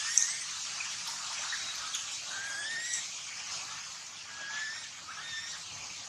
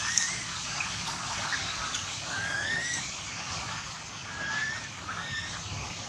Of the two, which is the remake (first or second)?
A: second